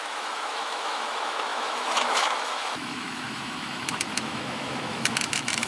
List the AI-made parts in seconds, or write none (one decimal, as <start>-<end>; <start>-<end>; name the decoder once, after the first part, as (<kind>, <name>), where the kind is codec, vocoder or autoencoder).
0.0-5.7 (autoencoder, DAC-VAE)